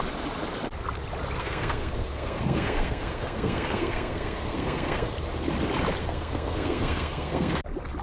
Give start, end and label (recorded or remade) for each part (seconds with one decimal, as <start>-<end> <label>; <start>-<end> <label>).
0.0-1.4 recorded; 1.4-5.1 remade; 5.1-6.0 recorded; 6.0-7.6 remade; 7.6-8.0 recorded